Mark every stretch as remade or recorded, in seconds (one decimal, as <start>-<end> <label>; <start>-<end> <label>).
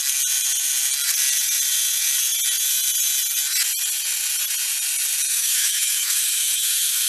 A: 0.0-5.3 recorded; 5.3-7.1 remade